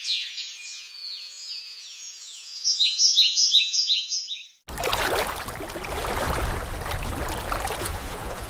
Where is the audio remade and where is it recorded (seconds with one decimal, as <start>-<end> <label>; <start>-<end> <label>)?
0.0-4.4 remade; 4.4-7.8 recorded; 7.8-8.5 remade